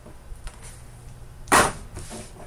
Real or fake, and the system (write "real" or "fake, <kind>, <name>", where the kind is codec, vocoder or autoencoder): fake, vocoder, BigVGAN v2